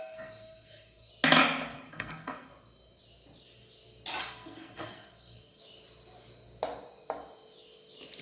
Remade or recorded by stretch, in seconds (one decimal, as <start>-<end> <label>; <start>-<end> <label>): 0.0-1.1 remade; 1.1-1.9 recorded; 1.9-2.5 remade; 2.5-4.2 recorded; 4.2-5.6 remade; 5.6-8.2 recorded